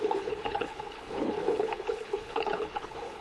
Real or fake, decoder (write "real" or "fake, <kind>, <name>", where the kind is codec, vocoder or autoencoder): fake, codec, HILCodec